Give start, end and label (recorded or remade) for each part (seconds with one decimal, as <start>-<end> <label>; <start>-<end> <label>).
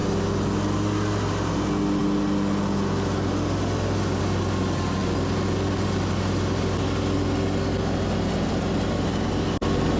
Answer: 0.0-10.0 recorded